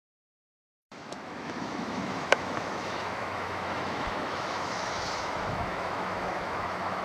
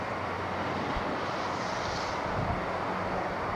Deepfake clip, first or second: first